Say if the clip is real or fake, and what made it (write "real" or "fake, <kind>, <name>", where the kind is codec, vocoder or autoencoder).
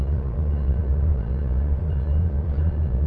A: fake, vocoder, Vocos